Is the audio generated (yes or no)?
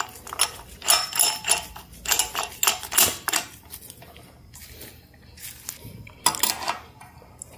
no